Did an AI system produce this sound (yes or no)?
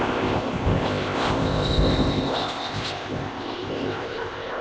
yes